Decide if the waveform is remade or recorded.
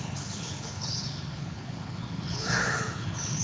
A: remade